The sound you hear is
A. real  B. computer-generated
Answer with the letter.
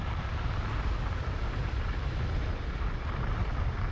A